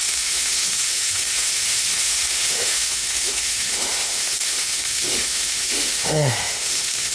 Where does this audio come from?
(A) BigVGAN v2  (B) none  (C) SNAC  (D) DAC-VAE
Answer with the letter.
D